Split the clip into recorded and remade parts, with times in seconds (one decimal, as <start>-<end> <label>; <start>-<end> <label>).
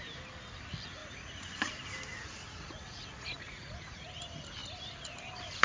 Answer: 0.0-1.0 recorded; 1.0-1.7 remade; 1.7-2.1 recorded; 2.1-4.1 remade; 4.1-5.6 recorded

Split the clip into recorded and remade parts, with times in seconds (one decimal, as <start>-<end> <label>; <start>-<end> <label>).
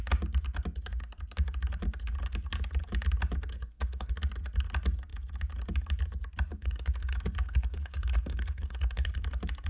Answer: 0.0-3.5 recorded; 3.5-4.1 remade; 4.1-6.5 recorded; 6.5-9.2 remade; 9.2-9.7 recorded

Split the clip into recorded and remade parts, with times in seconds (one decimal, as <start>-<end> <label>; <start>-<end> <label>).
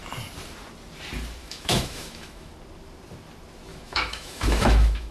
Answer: 0.0-1.4 recorded; 1.4-2.5 remade; 2.5-3.7 recorded; 3.7-5.1 remade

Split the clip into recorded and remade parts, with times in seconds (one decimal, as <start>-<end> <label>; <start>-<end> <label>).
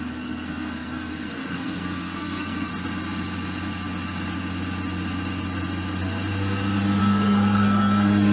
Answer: 0.0-2.7 remade; 2.7-7.0 recorded; 7.0-8.3 remade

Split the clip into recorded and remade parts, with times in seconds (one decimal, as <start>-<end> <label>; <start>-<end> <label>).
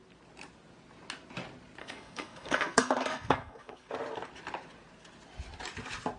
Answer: 0.0-1.8 recorded; 1.8-3.9 remade; 3.9-6.2 recorded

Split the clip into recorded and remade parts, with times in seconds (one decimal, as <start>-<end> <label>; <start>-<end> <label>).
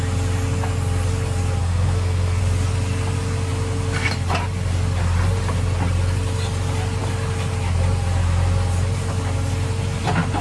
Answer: 0.0-1.6 recorded; 1.6-2.4 remade; 2.4-10.4 recorded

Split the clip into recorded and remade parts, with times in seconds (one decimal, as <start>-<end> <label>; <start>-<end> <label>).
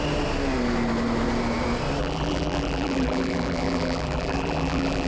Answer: 0.0-2.0 recorded; 2.0-5.1 remade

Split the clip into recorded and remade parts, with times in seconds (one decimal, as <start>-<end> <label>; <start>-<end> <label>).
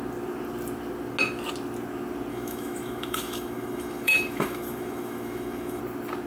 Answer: 0.0-2.3 recorded; 2.3-5.8 remade; 5.8-6.3 recorded